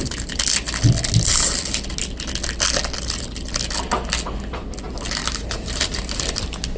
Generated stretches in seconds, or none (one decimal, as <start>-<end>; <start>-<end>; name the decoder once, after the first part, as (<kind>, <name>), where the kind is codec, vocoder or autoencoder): 5.2-5.9 (vocoder, BigVGAN v2)